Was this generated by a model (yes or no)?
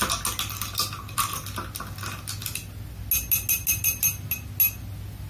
no